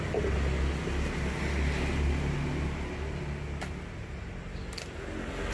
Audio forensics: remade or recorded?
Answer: recorded